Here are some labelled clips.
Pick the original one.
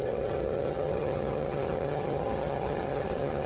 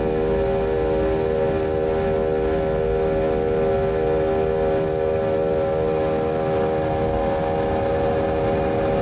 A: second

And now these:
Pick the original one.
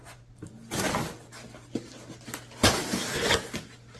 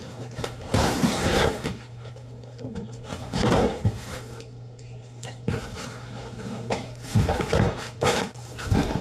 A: first